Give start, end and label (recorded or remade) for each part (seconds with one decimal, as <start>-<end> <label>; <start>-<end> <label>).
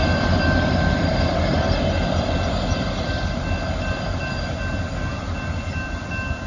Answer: 0.0-6.5 recorded